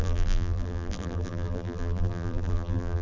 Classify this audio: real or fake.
fake